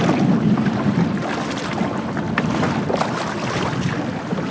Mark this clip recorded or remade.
recorded